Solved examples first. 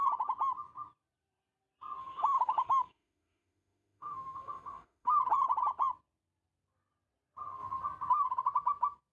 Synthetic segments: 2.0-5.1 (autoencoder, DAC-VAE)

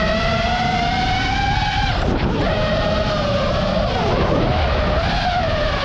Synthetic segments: 0.0-2.4 (vocoder, BigVGAN v2); 3.0-4.5; 5.0-5.8

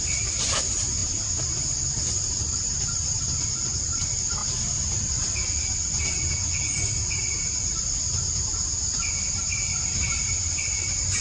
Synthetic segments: 0.0-4.4 (vocoder, BigVGAN v2); 9.2-11.2